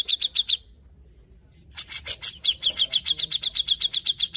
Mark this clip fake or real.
real